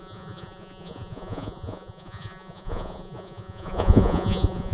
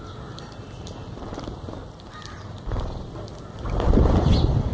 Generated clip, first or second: first